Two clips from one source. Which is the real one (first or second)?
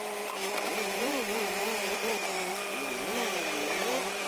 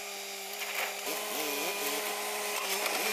second